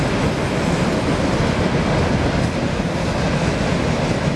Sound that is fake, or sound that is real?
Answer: real